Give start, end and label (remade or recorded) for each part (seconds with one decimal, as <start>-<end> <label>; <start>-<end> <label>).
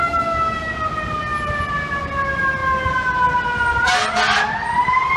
0.0-0.7 remade; 0.7-5.2 recorded